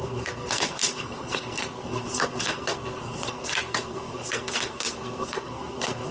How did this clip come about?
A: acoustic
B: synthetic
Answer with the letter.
B